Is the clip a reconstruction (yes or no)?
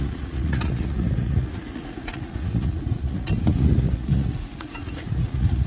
yes